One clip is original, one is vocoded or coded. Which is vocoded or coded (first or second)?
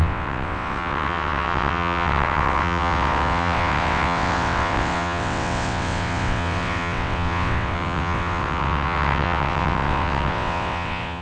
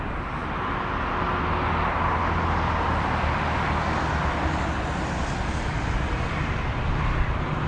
first